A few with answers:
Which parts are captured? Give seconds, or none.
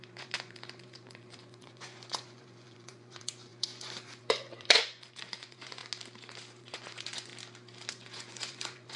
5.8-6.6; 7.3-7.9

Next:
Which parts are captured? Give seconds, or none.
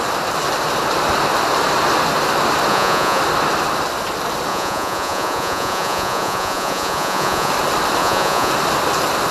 0.0-2.7; 3.2-4.5; 7.5-8.0; 8.5-9.3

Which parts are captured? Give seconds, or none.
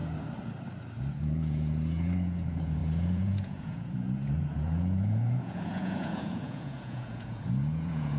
0.0-1.1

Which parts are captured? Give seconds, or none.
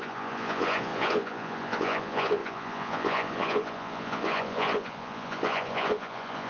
none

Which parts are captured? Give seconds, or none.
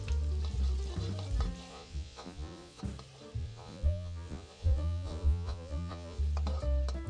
0.0-1.7; 2.8-3.4; 6.2-7.1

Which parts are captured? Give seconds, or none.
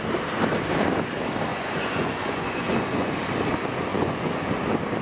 0.0-1.5; 3.1-3.9; 4.5-5.0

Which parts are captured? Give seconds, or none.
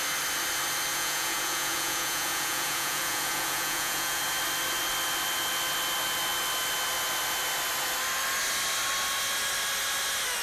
0.0-0.9; 4.2-10.4